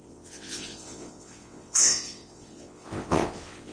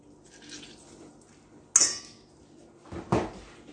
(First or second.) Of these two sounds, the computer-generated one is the first